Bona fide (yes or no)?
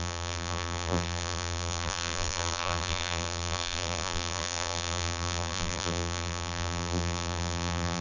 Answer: no